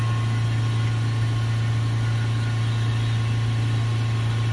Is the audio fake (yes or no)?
no